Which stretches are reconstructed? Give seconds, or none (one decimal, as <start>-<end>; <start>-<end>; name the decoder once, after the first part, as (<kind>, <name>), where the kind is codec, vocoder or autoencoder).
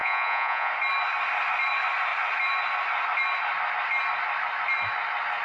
0.0-0.7 (vocoder, Vocos)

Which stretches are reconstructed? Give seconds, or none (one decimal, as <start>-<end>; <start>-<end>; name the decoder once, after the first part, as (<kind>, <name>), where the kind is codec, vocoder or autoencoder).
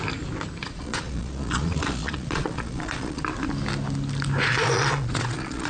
0.6-3.2 (vocoder, Vocos); 4.5-5.7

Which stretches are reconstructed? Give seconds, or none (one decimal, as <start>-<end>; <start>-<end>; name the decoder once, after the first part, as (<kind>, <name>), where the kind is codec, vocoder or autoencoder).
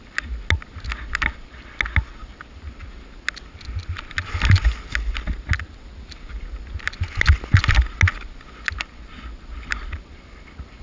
none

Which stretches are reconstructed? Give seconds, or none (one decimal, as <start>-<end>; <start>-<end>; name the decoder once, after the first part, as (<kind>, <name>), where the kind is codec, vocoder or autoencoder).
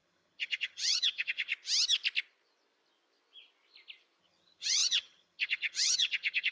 0.0-1.5 (vocoder, HiFi-GAN); 4.2-6.5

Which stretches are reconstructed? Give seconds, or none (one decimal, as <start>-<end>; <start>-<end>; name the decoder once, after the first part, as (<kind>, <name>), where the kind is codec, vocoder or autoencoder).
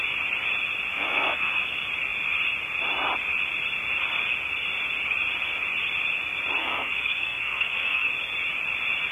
0.9-1.5 (codec, SNAC); 6.6-8.1